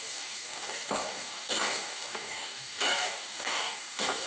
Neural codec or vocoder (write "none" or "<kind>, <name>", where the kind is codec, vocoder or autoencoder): codec, DAC